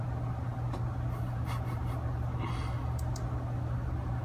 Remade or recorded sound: recorded